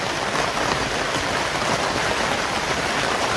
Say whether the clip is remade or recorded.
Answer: recorded